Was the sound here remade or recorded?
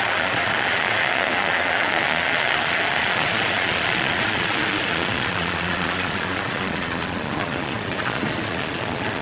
remade